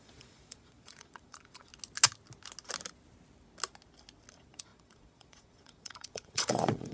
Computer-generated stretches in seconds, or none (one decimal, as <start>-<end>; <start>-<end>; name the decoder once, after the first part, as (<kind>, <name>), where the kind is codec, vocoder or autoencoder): 0.0-1.7 (vocoder, Vocos); 4.3-6.9